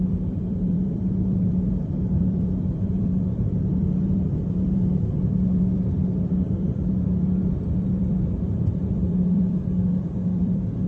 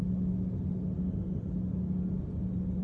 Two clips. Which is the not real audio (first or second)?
first